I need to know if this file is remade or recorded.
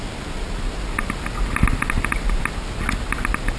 recorded